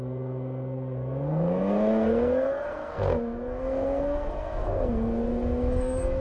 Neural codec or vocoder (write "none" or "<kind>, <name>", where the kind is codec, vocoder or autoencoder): codec, SNAC